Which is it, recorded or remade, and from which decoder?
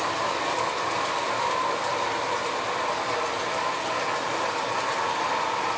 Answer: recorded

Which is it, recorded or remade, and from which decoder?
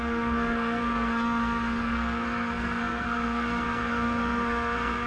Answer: remade, codec, SNAC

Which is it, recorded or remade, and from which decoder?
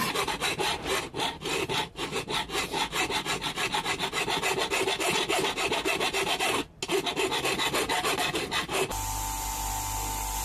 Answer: recorded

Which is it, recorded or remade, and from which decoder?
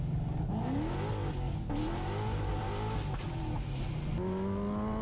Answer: recorded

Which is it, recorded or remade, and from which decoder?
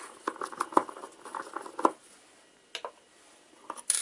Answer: recorded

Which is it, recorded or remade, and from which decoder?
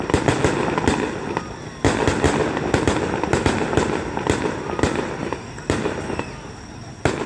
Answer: recorded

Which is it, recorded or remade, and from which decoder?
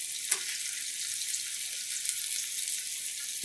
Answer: recorded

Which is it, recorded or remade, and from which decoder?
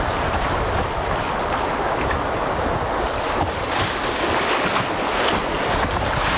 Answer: recorded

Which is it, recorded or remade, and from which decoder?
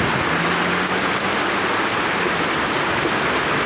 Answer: recorded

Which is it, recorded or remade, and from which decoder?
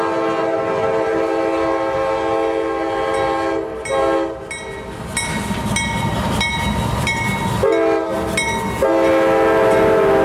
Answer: recorded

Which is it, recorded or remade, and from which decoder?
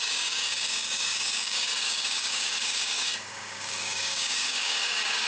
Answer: remade, codec, DAC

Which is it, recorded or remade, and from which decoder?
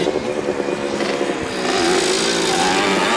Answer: recorded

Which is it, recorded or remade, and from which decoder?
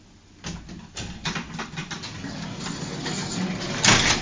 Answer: recorded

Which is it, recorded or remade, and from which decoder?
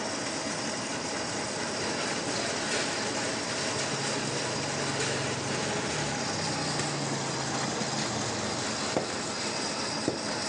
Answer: recorded